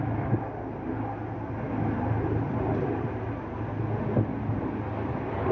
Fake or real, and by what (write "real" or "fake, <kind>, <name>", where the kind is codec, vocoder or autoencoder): real